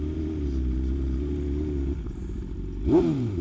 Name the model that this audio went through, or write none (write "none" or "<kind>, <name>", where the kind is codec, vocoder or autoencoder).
vocoder, BigVGAN v2